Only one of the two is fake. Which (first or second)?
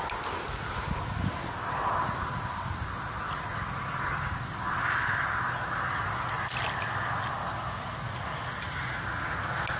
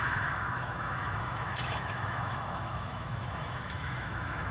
second